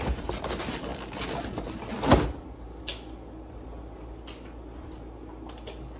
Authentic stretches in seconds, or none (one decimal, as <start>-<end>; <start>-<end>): 0.0-6.0